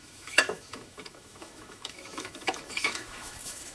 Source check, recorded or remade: remade